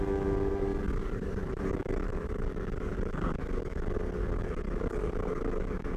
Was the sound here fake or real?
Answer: fake